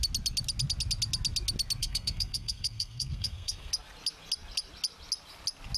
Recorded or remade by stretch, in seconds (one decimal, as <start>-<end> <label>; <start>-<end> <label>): 0.0-1.8 recorded; 1.8-3.7 remade; 3.7-5.8 recorded